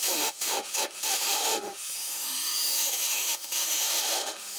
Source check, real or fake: fake